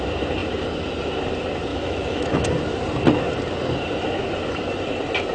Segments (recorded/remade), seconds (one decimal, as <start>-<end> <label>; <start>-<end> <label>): 0.0-1.7 recorded; 1.7-2.5 remade; 2.5-5.3 recorded